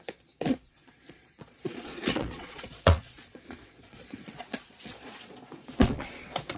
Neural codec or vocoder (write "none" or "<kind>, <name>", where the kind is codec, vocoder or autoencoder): vocoder, Vocos